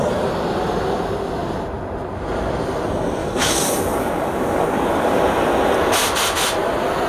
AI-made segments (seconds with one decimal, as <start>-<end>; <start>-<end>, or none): 3.2-5.2